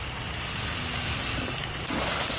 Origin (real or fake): real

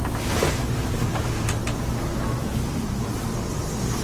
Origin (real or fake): real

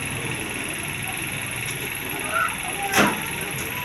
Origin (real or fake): fake